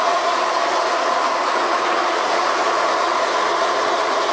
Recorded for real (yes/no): no